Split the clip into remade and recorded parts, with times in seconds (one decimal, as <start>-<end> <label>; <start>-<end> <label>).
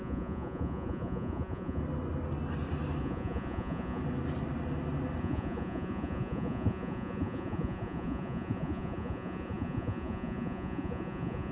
0.0-1.8 remade; 1.8-3.0 recorded; 3.0-4.0 remade; 4.0-5.2 recorded; 5.2-11.5 remade